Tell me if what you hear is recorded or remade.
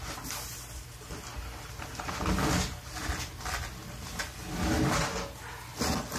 recorded